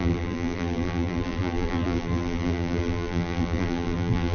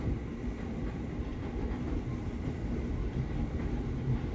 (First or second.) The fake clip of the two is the first